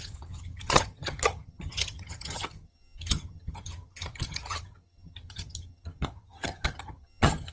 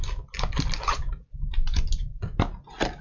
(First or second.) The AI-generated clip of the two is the first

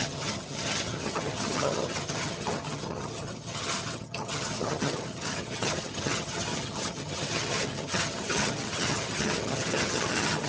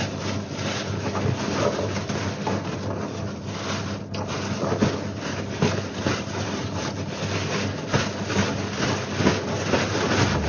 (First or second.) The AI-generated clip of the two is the first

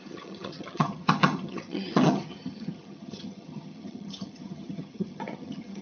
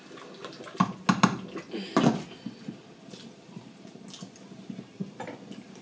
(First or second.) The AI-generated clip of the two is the first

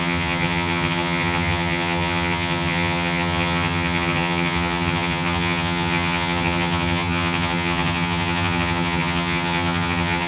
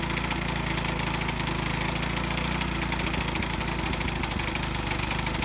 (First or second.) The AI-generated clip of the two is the first